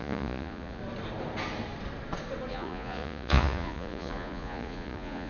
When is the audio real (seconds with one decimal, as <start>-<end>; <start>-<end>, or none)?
0.8-2.5